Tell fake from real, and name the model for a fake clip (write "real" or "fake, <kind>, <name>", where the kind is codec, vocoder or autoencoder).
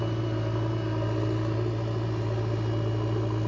real